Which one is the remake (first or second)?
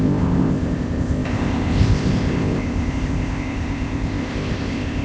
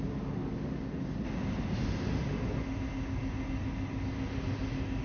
first